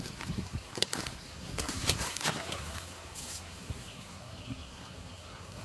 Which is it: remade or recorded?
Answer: remade